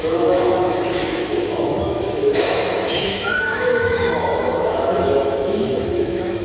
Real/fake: fake